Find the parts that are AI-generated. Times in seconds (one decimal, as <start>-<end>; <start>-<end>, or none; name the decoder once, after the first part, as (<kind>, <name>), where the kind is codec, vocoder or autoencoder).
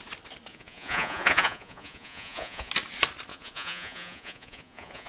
0.5-2.7 (vocoder, Vocos); 3.3-5.1